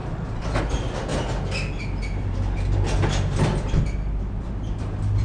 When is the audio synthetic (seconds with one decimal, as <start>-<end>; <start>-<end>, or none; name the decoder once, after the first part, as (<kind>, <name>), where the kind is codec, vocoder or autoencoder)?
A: none